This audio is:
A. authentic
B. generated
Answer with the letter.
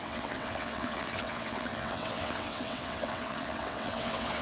B